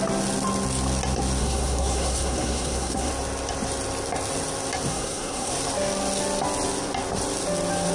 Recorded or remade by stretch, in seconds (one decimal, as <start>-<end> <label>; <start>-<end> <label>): 0.0-1.4 recorded; 1.4-3.1 remade; 3.1-4.9 recorded; 4.9-5.5 remade; 5.5-7.9 recorded